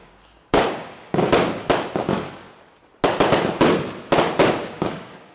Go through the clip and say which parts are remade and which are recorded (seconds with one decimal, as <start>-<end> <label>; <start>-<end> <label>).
0.0-1.3 remade; 1.3-4.5 recorded; 4.5-5.3 remade